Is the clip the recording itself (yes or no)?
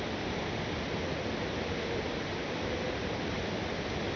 yes